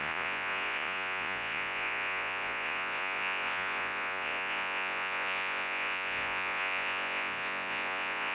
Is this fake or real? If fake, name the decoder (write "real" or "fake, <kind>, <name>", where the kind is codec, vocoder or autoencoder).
fake, vocoder, Vocos